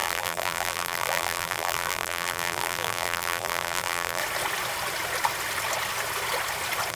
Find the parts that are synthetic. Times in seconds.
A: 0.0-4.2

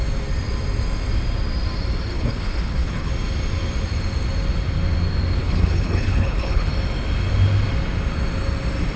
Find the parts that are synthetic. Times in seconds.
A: 2.1-3.1; 5.4-6.7

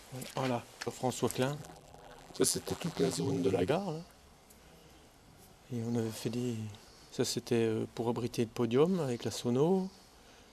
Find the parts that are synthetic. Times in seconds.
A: 1.6-3.7

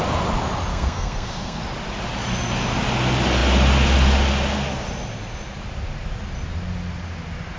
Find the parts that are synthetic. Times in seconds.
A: 0.7-1.6

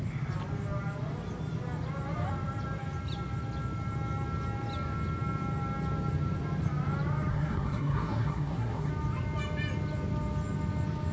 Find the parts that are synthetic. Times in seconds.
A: 7.3-8.9

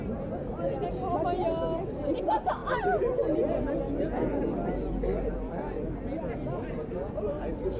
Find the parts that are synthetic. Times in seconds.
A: none

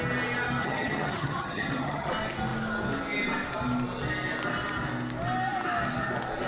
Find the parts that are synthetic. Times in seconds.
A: 0.6-2.1

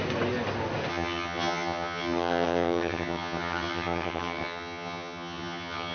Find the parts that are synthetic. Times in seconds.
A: 0.9-5.9